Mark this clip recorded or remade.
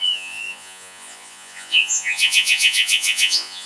remade